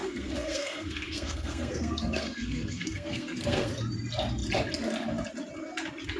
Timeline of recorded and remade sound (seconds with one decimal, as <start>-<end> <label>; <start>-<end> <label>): 0.0-3.7 remade; 3.7-6.2 recorded